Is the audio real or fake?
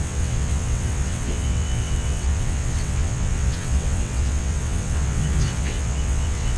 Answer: fake